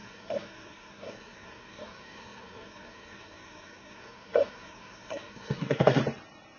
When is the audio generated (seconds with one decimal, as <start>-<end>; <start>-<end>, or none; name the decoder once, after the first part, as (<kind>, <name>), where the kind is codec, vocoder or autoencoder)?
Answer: 0.0-6.0 (codec, SNAC)

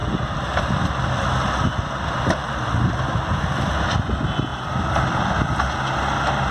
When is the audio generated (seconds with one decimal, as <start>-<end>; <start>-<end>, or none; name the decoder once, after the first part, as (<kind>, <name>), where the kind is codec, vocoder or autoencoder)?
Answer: 0.0-2.5 (vocoder, BigVGAN v2); 4.5-5.3

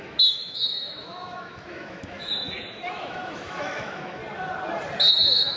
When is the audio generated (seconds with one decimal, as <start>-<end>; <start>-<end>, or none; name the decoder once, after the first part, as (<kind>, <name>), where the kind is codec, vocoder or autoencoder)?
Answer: 0.0-4.2 (autoencoder, DAC-VAE); 5.1-5.6

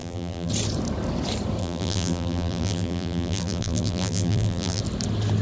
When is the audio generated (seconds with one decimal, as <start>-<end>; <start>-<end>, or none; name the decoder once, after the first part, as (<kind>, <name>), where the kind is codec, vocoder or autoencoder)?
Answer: 0.0-0.5 (vocoder, BigVGAN v2); 1.6-4.8